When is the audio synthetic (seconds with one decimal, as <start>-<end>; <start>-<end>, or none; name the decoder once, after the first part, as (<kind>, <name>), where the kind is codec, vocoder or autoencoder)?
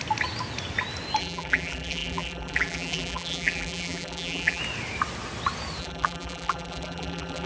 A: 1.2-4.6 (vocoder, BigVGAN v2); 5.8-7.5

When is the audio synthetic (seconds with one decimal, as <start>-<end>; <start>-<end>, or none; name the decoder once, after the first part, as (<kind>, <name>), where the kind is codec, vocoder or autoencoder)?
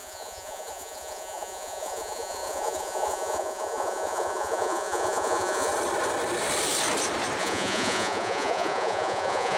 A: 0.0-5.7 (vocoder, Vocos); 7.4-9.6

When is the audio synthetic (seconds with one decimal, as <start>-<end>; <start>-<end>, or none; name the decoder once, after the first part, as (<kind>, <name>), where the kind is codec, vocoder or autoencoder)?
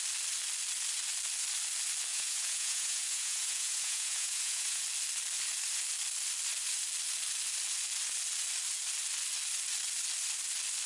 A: 2.1-4.8 (vocoder, Vocos)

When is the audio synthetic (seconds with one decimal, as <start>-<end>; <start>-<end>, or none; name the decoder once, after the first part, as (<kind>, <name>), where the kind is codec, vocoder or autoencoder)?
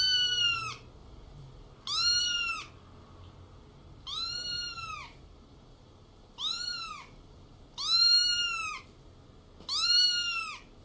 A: 1.0-1.7 (vocoder, BigVGAN v2); 2.1-2.7; 4.5-7.6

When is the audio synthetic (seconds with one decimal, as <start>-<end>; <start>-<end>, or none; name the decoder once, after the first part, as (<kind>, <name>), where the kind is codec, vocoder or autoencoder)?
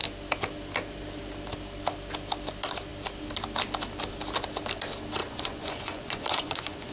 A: 5.2-6.9 (vocoder, Vocos)